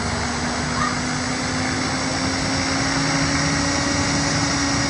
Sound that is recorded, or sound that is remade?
recorded